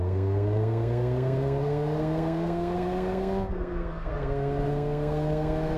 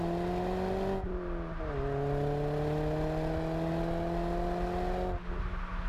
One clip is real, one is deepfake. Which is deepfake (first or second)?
first